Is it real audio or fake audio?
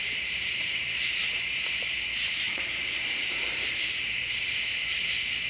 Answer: fake